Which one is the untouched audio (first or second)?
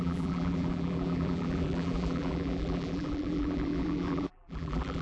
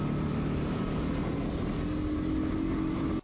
second